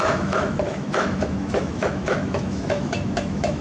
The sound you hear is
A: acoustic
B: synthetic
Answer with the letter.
B